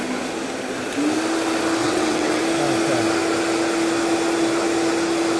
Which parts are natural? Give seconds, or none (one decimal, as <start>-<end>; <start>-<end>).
0.0-1.8; 2.4-5.4